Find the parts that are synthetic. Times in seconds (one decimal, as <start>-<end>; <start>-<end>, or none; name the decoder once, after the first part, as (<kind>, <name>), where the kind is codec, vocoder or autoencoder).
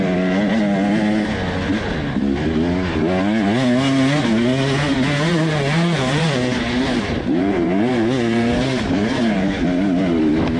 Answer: 5.3-9.5 (vocoder, BigVGAN v2)